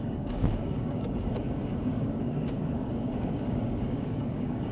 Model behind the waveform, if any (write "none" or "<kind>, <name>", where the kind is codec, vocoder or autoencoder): codec, DAC